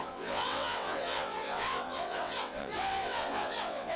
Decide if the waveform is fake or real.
fake